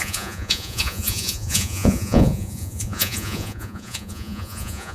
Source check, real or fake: fake